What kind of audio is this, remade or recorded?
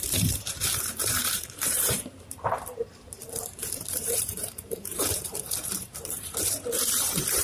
remade